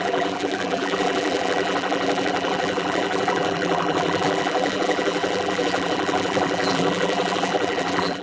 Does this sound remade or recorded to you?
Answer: remade